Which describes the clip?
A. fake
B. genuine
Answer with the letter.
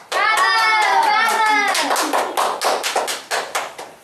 B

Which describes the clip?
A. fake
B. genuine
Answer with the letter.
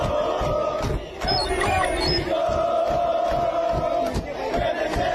B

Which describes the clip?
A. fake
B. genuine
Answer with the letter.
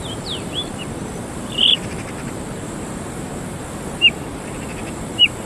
A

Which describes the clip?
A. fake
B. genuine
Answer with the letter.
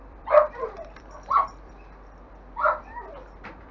A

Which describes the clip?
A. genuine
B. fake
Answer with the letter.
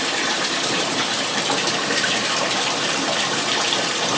B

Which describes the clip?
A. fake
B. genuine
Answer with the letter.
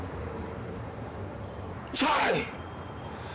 A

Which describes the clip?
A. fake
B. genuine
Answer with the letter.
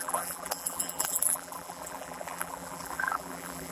A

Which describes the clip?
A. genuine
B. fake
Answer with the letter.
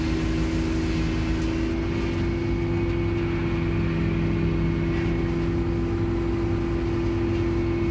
A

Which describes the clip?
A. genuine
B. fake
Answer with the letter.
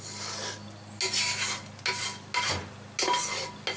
A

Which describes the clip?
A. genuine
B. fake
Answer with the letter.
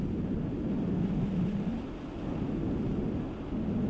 A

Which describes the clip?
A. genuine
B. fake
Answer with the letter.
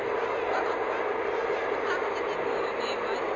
A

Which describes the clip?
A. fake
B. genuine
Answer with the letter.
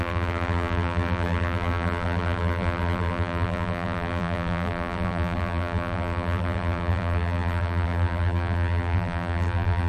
A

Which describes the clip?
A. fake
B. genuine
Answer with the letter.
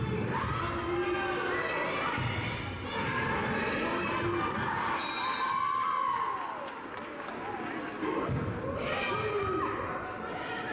B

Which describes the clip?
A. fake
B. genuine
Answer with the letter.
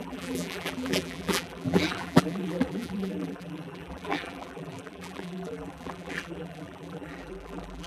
A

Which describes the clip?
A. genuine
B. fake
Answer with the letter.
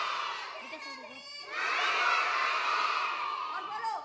A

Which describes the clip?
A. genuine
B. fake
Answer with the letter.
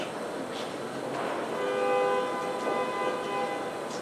A